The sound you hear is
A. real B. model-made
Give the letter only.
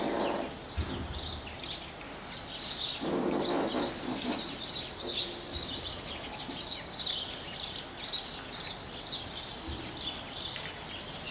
A